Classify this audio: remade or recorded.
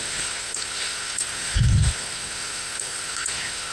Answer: remade